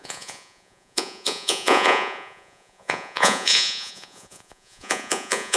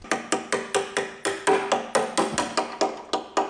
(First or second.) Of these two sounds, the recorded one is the second